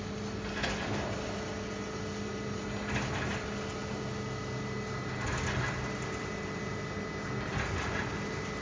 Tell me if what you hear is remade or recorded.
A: recorded